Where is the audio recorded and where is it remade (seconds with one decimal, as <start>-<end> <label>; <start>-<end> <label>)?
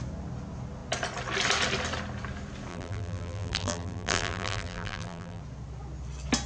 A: 0.0-2.7 recorded; 2.7-5.4 remade; 5.4-6.5 recorded